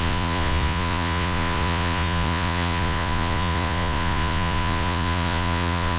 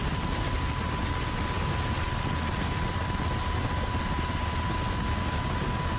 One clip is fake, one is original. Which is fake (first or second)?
first